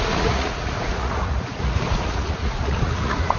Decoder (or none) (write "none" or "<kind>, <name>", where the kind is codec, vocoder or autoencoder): vocoder, Vocos